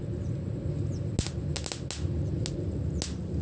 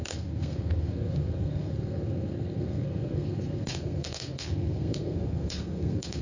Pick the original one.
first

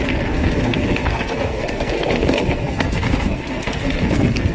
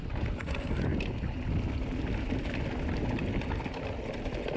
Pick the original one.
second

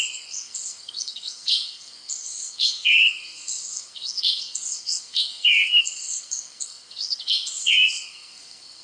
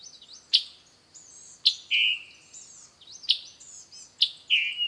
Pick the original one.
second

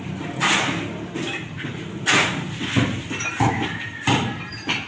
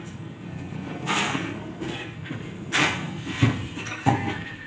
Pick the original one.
first